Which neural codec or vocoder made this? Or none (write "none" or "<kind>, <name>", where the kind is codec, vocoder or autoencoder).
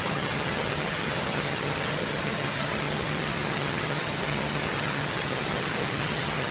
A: vocoder, HiFi-GAN